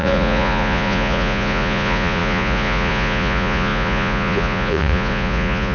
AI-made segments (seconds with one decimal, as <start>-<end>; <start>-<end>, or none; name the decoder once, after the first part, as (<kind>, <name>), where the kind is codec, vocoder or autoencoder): 0.0-5.7 (vocoder, Vocos)